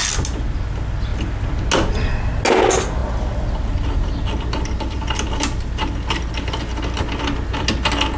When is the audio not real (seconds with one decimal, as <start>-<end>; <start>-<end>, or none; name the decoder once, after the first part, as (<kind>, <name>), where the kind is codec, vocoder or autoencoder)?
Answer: none